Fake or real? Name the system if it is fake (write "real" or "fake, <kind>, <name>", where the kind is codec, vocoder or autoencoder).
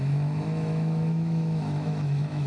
fake, autoencoder, DAC-VAE